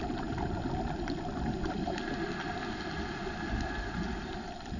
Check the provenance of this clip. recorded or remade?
recorded